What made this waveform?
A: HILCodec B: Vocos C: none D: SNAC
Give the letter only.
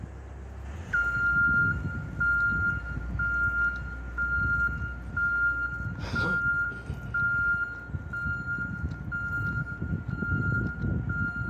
C